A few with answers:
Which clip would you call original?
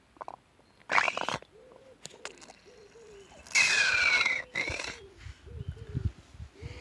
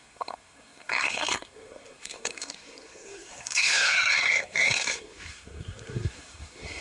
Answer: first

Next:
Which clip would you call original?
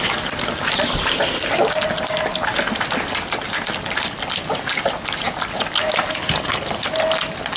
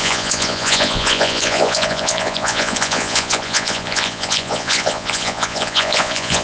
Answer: first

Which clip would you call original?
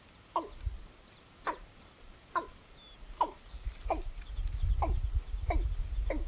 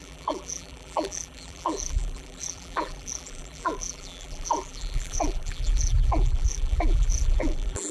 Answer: first